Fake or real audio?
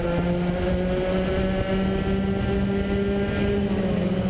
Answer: real